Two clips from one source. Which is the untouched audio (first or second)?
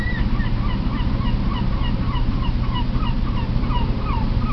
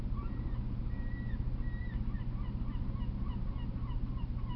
second